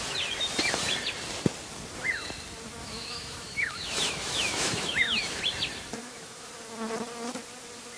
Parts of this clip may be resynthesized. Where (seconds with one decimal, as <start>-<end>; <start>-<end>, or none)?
2.8-5.4; 6.0-6.5